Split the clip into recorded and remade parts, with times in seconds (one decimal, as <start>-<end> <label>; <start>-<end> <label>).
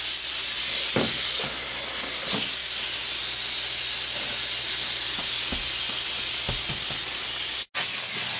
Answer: 0.0-8.4 recorded